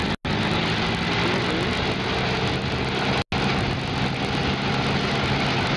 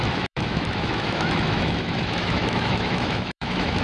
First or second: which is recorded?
first